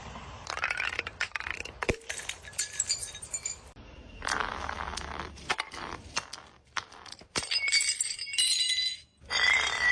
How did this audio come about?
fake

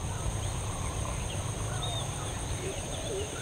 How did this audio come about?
fake